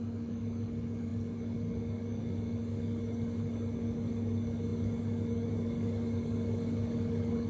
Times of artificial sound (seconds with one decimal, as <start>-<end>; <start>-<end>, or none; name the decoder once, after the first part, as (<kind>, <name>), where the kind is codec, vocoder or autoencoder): 0.0-7.5 (codec, DAC)